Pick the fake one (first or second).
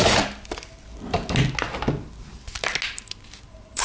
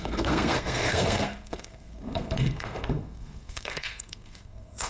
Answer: second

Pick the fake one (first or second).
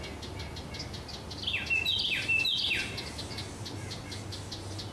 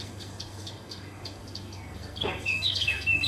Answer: second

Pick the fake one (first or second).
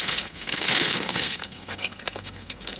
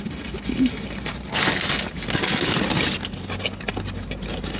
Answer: first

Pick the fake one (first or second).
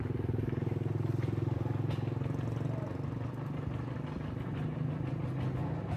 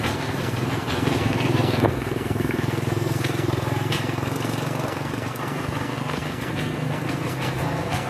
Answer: second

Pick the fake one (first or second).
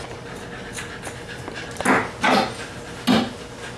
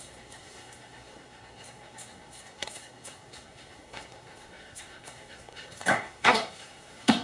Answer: second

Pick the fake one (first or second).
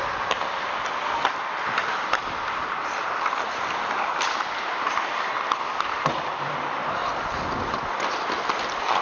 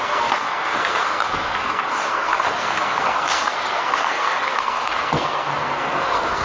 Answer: second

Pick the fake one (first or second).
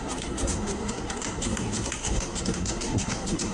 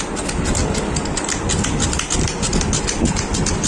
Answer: first